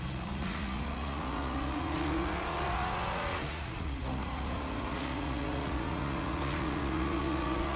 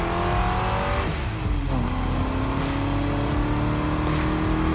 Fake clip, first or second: first